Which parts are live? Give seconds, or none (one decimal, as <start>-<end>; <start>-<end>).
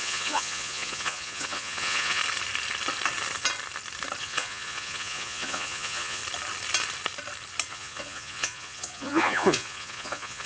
2.2-4.2; 6.2-7.7